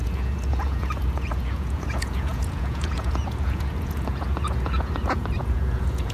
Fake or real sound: fake